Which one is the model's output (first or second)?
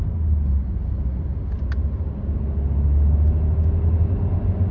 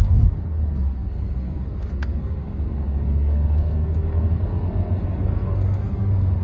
second